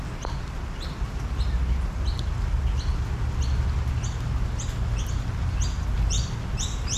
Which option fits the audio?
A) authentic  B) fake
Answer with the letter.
A